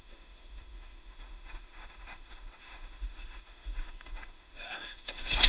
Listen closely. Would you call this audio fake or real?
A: fake